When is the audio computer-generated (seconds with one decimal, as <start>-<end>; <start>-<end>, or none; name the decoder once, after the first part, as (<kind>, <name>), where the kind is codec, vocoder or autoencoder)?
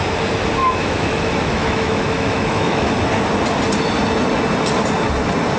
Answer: 0.6-2.9 (autoencoder, DAC-VAE)